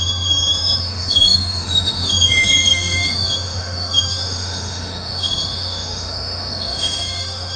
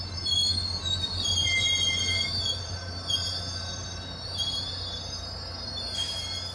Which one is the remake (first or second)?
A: first